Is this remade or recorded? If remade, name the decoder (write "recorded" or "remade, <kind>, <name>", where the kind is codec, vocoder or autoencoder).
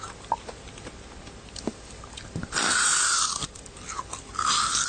recorded